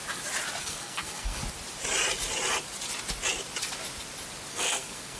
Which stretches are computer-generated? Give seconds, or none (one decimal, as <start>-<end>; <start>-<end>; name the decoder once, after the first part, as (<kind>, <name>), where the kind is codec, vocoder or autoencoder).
0.6-1.4 (codec, SNAC); 4.5-5.2